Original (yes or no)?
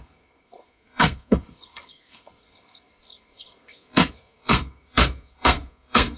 no